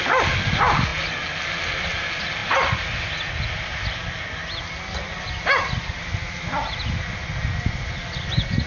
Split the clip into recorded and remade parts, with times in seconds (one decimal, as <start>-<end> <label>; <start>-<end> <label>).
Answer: 0.0-8.7 recorded